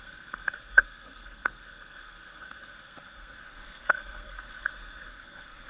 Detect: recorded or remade remade